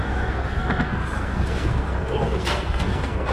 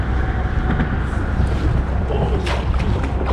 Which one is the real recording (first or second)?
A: second